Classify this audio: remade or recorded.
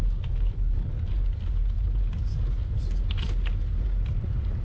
recorded